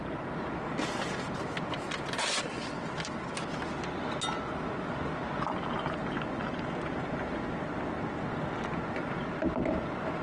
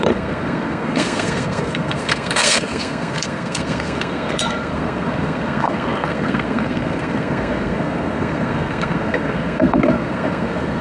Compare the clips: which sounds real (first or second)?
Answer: first